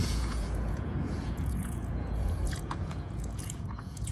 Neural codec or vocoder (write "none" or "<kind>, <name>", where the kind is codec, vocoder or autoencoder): vocoder, Vocos